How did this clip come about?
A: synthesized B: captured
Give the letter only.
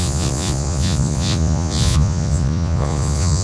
A